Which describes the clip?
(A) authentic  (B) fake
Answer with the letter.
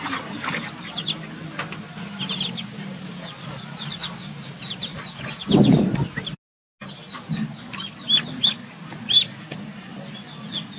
A